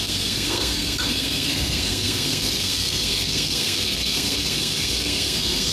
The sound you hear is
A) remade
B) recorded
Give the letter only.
A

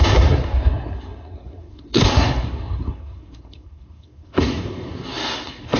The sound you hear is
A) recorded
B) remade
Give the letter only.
B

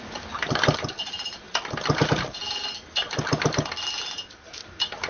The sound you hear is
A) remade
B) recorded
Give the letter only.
B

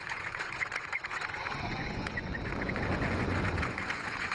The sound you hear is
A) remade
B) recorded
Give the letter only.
A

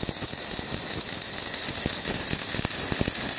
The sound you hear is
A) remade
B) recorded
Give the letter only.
B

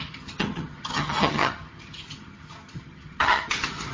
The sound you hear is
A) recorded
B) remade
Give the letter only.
B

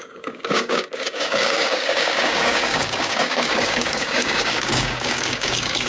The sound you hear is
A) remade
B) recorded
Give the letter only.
A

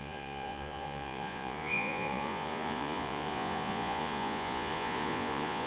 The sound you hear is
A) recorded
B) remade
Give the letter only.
B